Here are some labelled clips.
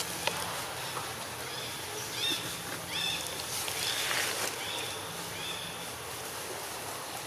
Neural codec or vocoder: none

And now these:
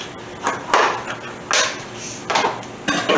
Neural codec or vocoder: none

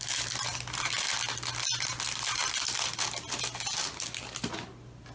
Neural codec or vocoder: none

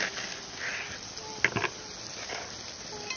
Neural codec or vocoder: none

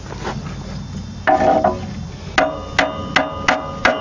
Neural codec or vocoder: none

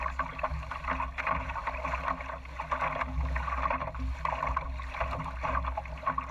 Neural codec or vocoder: none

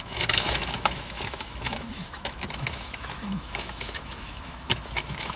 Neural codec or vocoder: autoencoder, DAC-VAE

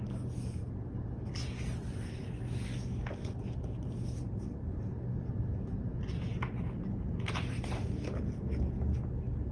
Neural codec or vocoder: none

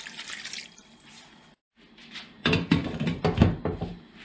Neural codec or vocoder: none